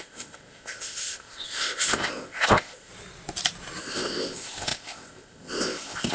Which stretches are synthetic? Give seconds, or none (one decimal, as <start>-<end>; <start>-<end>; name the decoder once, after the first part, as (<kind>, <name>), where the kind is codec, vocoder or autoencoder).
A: 0.0-2.9 (codec, ZipCodec); 3.8-6.1